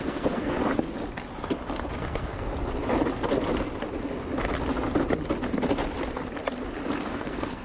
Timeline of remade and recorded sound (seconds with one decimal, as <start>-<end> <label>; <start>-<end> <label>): 0.0-0.6 remade; 0.6-2.0 recorded; 2.0-2.5 remade; 2.5-7.1 recorded; 7.1-7.6 remade